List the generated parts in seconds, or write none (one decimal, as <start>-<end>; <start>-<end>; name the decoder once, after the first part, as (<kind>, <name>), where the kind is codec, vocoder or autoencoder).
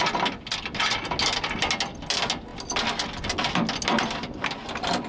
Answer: none